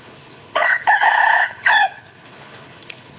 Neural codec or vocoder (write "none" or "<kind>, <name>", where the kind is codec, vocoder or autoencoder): codec, HILCodec